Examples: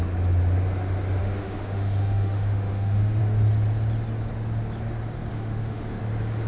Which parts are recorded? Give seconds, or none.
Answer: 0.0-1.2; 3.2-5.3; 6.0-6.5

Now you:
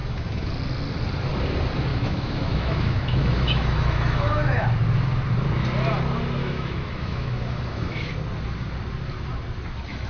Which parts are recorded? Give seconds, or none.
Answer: 0.5-1.9; 4.6-6.4; 8.1-10.1

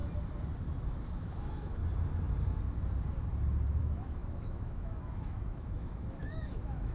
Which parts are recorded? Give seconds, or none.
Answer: 0.0-1.2; 1.8-3.8

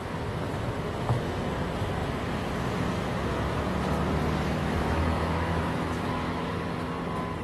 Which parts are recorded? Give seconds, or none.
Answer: 0.0-4.6; 6.5-7.4

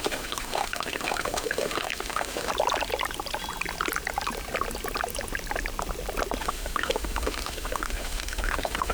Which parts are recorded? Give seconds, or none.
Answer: 2.5-6.4

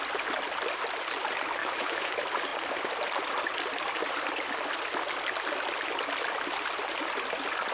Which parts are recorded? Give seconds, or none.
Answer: 0.0-1.6; 2.1-7.7

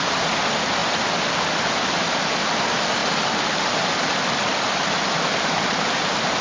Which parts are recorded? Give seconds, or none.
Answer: 0.0-6.4